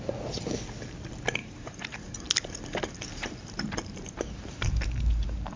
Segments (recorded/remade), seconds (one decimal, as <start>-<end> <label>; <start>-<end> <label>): 0.0-1.4 recorded; 1.4-2.0 remade; 2.0-3.1 recorded; 3.1-5.6 remade